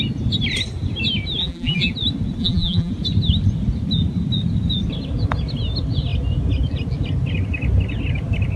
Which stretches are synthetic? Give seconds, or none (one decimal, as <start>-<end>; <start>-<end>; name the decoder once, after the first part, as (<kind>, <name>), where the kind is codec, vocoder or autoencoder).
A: 1.4-1.9 (vocoder, BigVGAN v2); 2.4-2.9